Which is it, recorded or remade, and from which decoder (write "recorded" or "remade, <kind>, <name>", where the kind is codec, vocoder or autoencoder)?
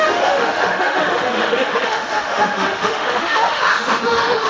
remade, autoencoder, DAC-VAE